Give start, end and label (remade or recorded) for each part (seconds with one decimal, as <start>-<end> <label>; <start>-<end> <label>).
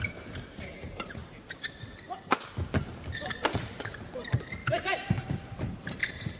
0.0-1.2 remade; 1.2-3.6 recorded; 3.6-6.4 remade